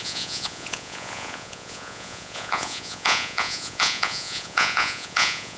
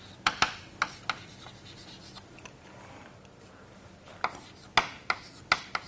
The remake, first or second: first